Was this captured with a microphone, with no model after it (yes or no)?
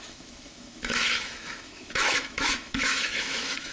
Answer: no